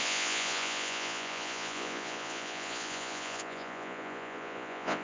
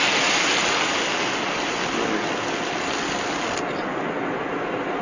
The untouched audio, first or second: second